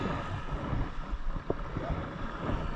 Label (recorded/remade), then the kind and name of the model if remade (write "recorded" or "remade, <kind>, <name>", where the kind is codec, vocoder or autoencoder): recorded